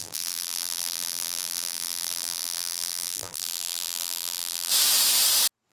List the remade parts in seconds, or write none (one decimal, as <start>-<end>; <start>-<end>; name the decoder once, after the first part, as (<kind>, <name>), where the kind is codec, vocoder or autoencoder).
0.0-4.7 (vocoder, BigVGAN v2)